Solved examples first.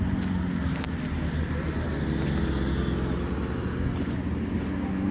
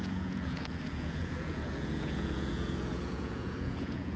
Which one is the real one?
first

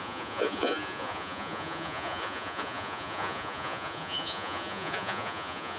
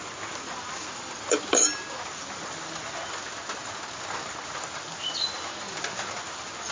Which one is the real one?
second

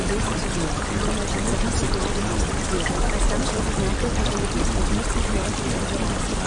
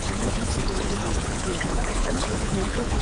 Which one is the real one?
first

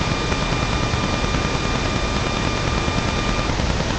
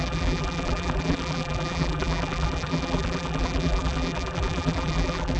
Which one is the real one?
first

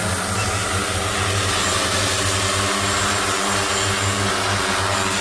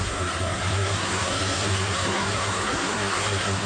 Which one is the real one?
first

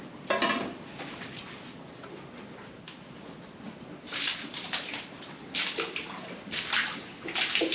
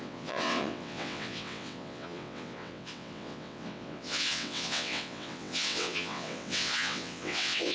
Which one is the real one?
first